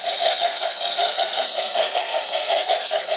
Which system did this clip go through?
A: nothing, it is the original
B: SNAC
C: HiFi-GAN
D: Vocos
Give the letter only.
B